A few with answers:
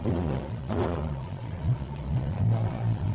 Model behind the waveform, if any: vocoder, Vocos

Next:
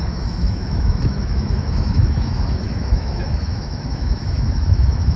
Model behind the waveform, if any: autoencoder, DAC-VAE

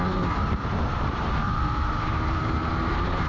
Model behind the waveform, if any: vocoder, BigVGAN v2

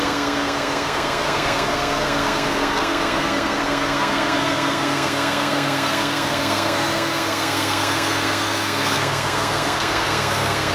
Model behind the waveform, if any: codec, SNAC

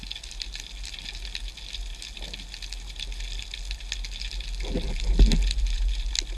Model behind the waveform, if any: none